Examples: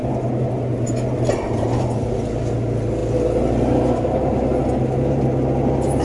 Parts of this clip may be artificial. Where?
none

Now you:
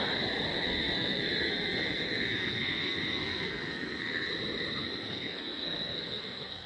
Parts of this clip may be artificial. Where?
0.5-4.3; 4.8-6.7